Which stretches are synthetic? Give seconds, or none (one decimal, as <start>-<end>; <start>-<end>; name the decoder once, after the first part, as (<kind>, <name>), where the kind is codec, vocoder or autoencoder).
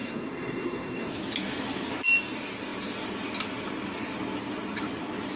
0.0-1.1 (codec, SNAC)